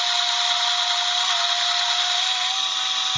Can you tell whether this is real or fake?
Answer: real